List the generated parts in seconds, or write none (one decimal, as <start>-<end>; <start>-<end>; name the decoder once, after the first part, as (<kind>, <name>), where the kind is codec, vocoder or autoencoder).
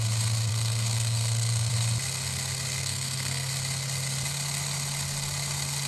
0.5-1.7 (codec, SNAC); 2.8-3.5